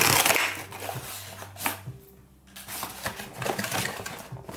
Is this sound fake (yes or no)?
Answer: no